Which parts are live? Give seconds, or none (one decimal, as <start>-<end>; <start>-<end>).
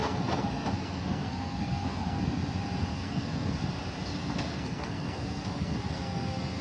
2.2-2.9; 3.6-4.2